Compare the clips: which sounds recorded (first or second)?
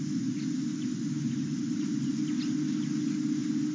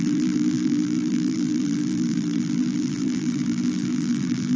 first